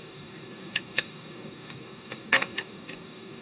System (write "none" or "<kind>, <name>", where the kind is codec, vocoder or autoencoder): codec, DAC